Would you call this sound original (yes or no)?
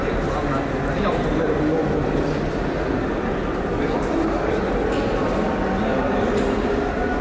yes